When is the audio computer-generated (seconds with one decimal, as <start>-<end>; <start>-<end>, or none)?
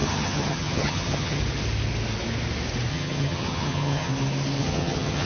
0.0-1.4; 2.9-4.1; 4.6-5.3